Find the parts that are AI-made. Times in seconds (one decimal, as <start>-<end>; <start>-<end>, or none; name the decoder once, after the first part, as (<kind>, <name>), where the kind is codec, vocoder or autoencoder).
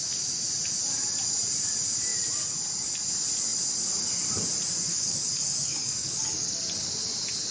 4.9-6.6 (codec, DAC)